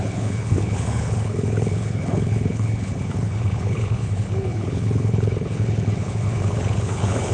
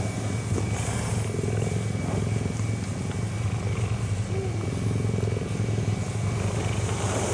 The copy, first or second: first